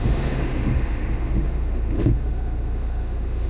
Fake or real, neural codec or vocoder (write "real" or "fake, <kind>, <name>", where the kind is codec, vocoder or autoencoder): fake, autoencoder, DAC-VAE